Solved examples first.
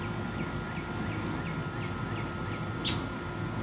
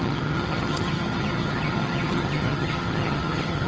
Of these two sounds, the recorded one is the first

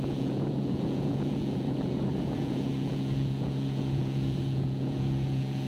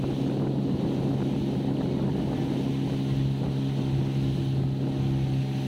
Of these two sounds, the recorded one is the second